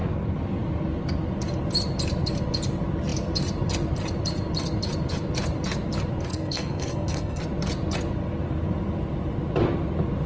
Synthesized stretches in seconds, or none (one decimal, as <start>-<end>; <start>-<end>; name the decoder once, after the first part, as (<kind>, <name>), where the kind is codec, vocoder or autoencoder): 6.3-7.4 (codec, SNAC)